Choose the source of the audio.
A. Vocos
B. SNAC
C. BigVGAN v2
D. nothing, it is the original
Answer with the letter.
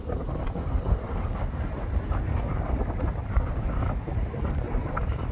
C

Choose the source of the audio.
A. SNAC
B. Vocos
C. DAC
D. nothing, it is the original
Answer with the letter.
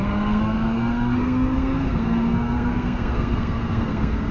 A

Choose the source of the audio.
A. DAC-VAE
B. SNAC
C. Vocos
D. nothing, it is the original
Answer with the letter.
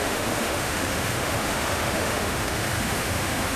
A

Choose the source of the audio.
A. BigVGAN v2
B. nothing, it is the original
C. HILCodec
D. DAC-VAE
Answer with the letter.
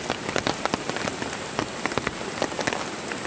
B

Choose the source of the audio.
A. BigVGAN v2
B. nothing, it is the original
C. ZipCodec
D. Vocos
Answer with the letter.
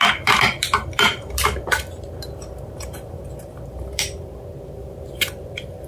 A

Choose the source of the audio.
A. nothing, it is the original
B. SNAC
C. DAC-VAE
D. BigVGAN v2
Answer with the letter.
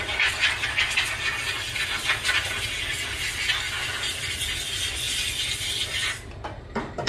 A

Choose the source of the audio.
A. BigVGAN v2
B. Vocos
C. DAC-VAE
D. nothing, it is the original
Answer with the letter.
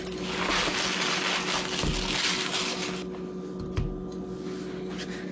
D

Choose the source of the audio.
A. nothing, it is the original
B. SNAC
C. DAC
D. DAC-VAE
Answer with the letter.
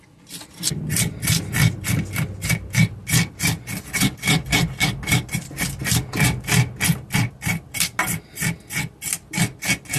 A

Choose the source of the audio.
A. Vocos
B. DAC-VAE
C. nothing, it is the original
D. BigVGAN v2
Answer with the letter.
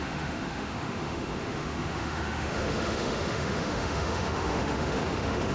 B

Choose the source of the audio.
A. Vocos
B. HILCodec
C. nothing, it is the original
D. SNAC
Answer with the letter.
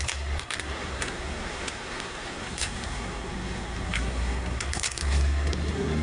D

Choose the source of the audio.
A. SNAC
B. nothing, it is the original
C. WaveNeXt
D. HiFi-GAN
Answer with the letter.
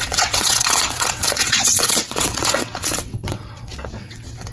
C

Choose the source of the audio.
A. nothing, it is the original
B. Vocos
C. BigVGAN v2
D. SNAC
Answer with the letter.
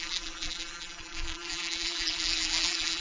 C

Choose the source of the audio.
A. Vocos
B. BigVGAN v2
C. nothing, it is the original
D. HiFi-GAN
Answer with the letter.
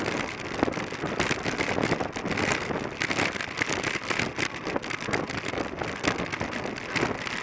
C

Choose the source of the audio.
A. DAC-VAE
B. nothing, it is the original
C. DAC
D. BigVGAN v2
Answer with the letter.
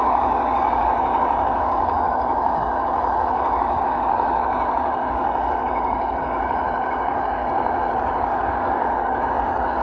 C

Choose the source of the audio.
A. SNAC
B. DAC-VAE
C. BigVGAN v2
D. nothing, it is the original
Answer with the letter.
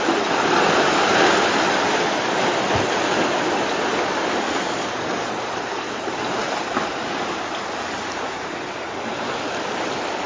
D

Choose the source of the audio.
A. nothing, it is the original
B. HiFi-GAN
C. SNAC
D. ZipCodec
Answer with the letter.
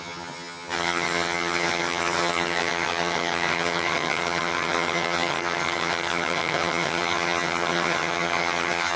B